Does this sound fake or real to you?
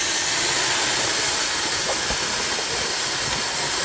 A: real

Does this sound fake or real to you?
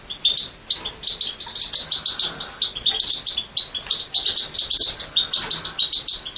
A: real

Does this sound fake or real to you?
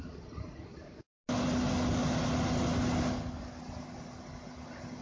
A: real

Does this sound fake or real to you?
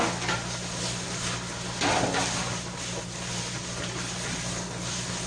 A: real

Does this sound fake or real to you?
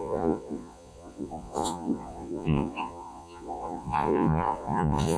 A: fake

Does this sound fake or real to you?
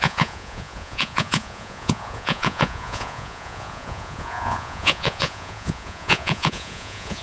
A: fake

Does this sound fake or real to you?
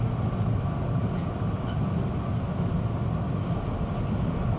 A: real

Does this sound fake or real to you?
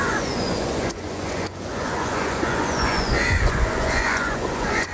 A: fake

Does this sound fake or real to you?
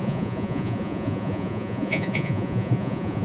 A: fake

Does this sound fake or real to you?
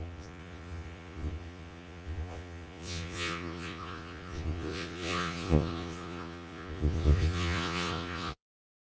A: fake